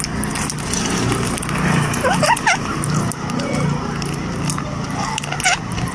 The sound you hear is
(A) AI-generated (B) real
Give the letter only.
B